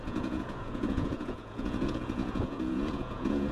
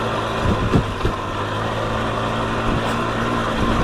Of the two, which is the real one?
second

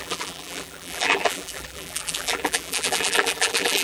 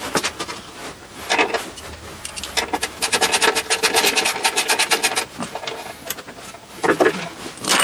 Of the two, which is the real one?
second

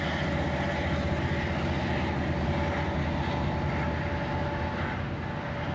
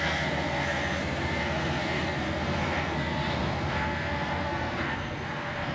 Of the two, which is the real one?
first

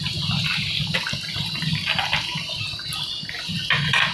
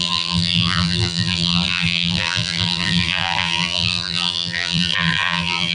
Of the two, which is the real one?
first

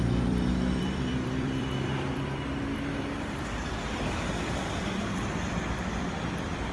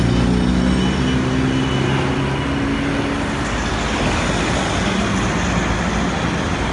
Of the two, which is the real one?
second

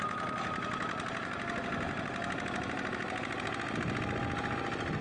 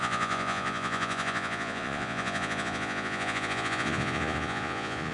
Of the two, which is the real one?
first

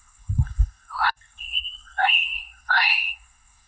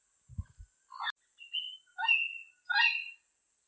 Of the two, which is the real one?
second